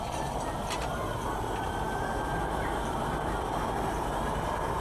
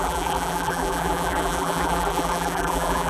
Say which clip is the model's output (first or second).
second